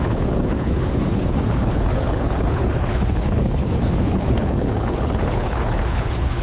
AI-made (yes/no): yes